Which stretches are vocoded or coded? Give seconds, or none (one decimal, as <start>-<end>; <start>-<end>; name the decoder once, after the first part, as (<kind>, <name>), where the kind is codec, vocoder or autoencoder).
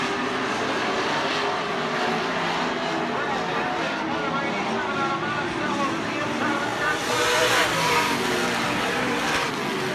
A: none